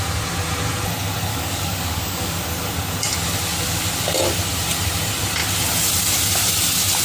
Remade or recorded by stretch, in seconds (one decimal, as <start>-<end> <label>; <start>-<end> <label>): 0.0-1.3 recorded; 1.3-2.4 remade; 2.4-7.0 recorded